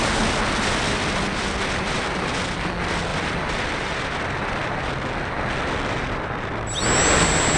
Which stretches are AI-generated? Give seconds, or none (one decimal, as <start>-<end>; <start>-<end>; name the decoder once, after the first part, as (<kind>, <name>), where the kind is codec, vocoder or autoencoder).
3.1-4.8 (vocoder, BigVGAN v2); 6.0-6.5